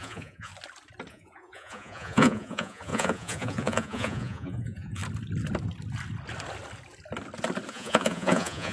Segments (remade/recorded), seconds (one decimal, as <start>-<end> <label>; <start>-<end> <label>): 0.0-0.5 remade; 0.5-1.1 recorded; 1.1-5.0 remade; 5.0-7.7 recorded; 7.7-8.7 remade